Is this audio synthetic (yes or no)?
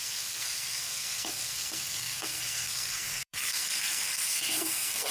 yes